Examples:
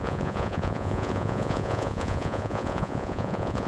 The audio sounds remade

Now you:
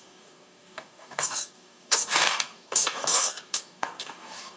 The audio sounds remade